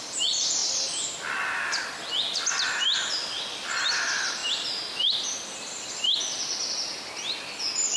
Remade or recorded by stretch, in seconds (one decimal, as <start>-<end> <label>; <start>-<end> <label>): 0.0-8.0 recorded